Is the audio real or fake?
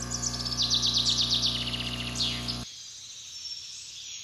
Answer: real